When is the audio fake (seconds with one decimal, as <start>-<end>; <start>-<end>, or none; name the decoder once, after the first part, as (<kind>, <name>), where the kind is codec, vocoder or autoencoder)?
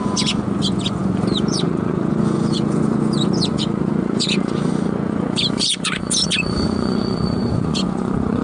0.0-8.4 (vocoder, Vocos)